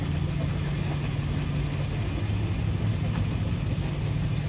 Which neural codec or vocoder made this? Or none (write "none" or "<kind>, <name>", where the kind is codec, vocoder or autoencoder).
none